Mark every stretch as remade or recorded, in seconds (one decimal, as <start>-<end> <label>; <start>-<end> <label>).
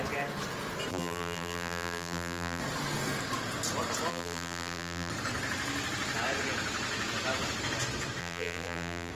0.0-0.9 recorded; 0.9-2.6 remade; 2.6-4.1 recorded; 4.1-5.1 remade; 5.1-8.2 recorded; 8.2-9.1 remade